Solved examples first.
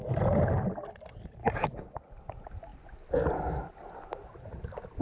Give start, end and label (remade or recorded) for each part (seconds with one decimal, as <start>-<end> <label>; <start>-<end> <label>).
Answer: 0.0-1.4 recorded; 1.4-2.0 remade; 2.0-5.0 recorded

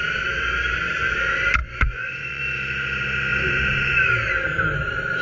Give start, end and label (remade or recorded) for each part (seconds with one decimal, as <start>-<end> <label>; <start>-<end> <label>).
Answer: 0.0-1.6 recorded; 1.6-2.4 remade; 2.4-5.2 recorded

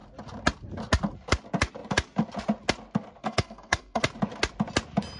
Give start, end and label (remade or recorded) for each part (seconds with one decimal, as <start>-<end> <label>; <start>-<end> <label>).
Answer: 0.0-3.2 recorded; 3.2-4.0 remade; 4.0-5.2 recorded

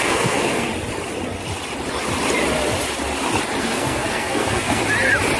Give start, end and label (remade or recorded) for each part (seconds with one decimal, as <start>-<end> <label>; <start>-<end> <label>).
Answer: 0.0-0.7 remade; 0.7-3.6 recorded; 3.6-4.8 remade; 4.8-5.4 recorded